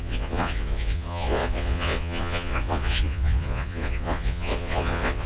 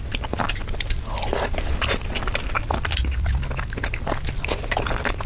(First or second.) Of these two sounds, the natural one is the second